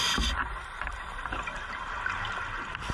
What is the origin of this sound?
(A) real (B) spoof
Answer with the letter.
A